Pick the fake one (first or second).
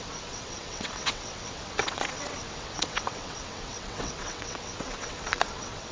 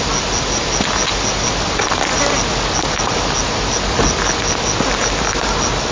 first